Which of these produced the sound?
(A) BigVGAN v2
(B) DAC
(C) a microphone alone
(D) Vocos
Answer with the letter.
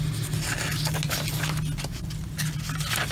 C